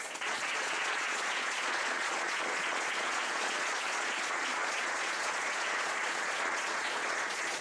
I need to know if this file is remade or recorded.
remade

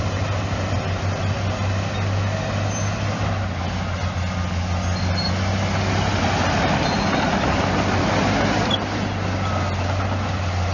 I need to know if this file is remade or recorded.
recorded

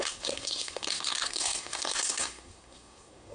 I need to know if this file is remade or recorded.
remade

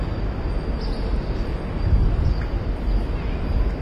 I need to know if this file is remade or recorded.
recorded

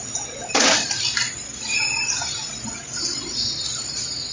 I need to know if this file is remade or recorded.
recorded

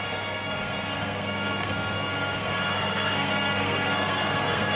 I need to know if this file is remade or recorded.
remade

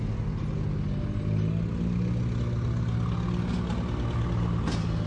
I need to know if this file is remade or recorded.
recorded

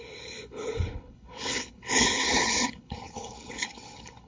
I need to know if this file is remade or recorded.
remade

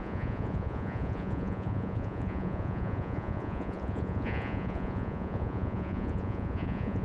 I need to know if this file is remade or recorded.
remade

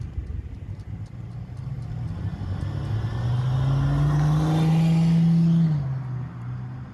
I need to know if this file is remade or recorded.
recorded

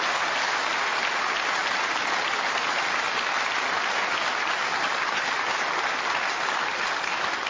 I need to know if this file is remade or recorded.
recorded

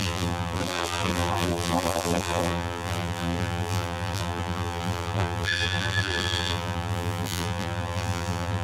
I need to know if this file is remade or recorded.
remade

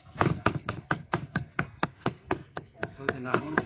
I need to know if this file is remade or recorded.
remade